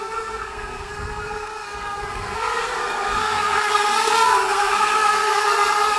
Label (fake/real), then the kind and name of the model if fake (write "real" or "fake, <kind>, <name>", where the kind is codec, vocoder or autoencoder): fake, codec, SNAC